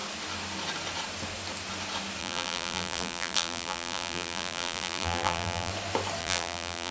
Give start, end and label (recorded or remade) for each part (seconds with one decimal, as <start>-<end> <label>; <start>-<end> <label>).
0.0-2.2 recorded; 2.2-5.7 remade; 5.7-6.2 recorded; 6.2-6.9 remade